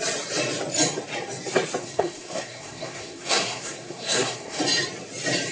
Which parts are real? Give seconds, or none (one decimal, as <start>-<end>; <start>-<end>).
0.0-1.8; 4.6-5.5